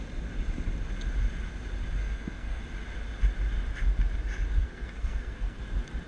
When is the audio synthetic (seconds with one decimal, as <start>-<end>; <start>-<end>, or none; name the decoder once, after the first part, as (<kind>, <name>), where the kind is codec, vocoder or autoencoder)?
2.0-2.6 (codec, SNAC); 4.6-5.6